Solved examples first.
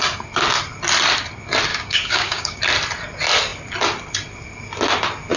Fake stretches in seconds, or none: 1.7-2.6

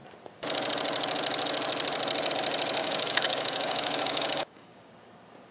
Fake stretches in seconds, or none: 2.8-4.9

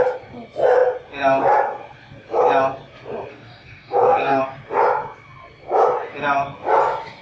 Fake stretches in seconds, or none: 3.3-4.4

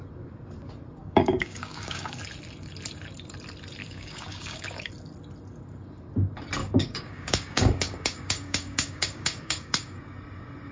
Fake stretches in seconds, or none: 1.0-2.2; 3.8-4.9; 6.6-10.0

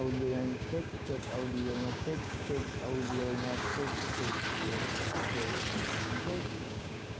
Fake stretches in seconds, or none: 0.0-2.6; 3.2-3.7; 6.0-7.2

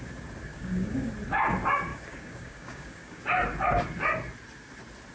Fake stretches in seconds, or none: 0.5-1.1; 1.9-3.2

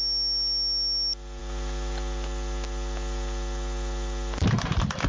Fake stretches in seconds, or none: none

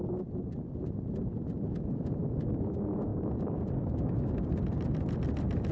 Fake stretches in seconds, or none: 3.1-3.6